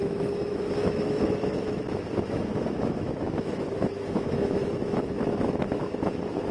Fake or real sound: fake